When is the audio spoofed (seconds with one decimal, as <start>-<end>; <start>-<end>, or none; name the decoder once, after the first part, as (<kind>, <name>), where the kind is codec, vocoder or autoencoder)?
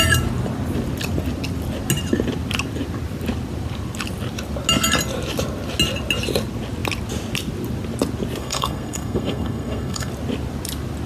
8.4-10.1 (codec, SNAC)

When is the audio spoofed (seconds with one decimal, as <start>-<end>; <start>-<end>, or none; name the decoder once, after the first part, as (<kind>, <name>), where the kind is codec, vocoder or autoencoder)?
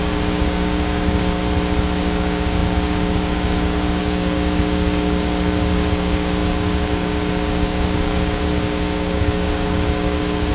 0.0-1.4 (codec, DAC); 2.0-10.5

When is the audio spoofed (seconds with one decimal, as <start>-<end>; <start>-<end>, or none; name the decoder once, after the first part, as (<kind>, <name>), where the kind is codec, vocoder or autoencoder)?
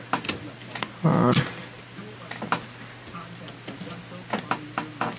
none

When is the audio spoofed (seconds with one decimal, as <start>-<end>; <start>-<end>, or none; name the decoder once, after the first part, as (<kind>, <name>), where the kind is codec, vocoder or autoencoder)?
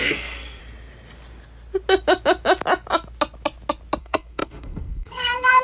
0.0-0.6 (codec, SNAC); 4.0-5.6